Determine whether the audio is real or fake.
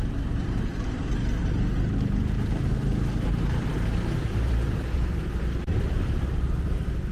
fake